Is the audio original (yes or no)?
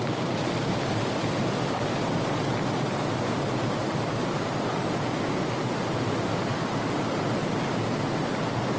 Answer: yes